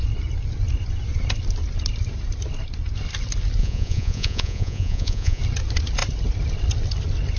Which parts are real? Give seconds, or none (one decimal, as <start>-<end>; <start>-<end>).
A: 0.0-3.6; 5.4-7.4